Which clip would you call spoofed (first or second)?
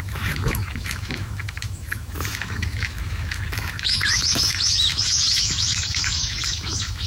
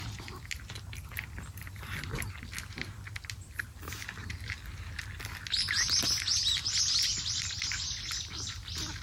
first